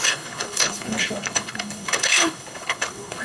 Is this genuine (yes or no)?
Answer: no